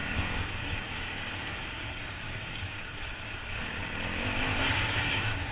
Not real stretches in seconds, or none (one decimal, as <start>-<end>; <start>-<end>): 0.0-3.8; 4.8-5.5